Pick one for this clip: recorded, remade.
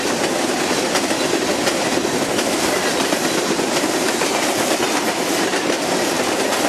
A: remade